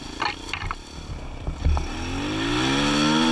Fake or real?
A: real